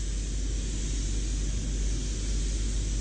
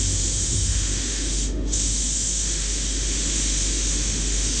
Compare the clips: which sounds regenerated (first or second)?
second